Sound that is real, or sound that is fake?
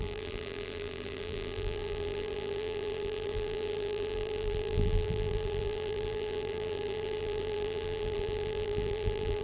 fake